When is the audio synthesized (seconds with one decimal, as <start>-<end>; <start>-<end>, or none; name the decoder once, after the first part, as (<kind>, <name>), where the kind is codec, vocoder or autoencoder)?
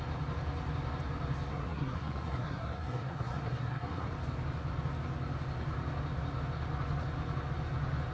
1.5-4.1 (codec, SNAC)